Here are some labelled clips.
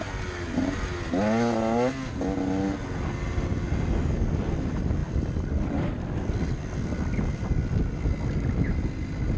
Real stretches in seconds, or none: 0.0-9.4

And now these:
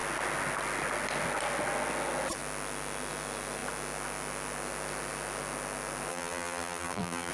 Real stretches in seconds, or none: 0.0-6.1

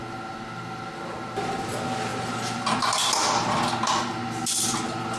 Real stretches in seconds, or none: 0.0-5.2

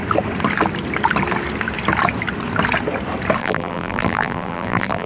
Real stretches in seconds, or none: 0.0-3.4

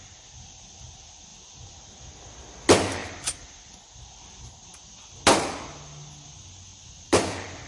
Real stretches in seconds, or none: 0.0-1.3; 1.9-3.0; 4.4-6.7

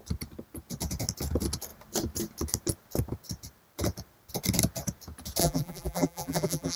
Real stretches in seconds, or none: 0.0-5.4